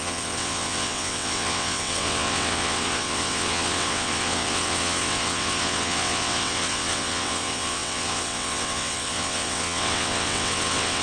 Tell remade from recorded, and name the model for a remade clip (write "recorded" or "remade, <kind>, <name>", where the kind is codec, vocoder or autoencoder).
remade, vocoder, WaveNeXt